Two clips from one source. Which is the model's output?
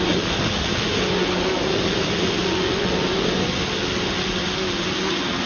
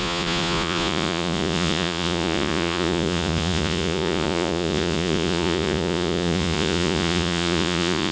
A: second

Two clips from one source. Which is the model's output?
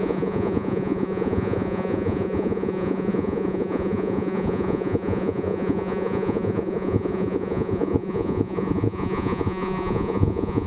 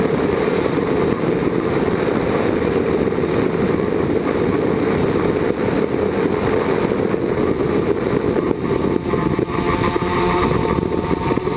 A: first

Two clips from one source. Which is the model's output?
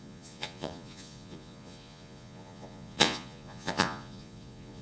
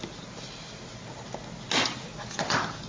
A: first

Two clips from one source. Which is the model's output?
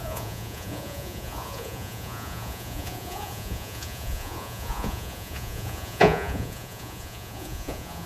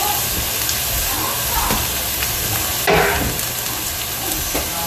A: first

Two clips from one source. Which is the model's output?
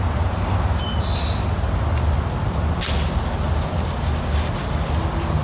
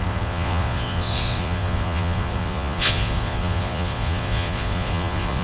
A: second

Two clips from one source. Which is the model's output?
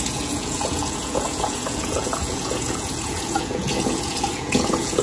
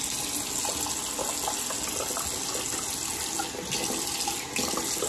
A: first